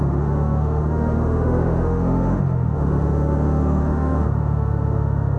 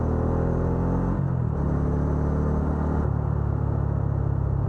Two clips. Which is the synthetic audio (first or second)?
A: first